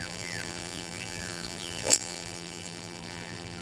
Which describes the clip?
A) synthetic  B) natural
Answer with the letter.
A